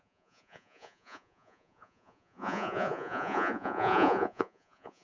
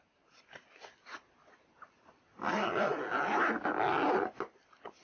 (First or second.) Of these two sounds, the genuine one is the second